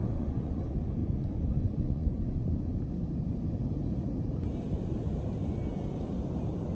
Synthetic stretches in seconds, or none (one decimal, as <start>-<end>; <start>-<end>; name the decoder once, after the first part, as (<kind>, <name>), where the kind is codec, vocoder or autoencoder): 0.0-0.6 (vocoder, Vocos); 1.0-2.6